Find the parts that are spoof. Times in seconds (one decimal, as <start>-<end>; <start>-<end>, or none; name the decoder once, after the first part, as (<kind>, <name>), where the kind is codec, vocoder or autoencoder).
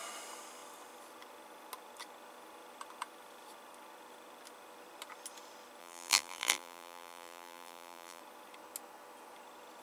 5.8-8.2 (vocoder, BigVGAN v2)